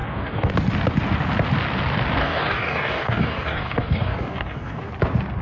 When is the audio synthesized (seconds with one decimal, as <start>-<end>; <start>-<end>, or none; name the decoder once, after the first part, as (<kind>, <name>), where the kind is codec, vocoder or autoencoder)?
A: 0.0-0.5 (codec, DAC); 2.2-4.9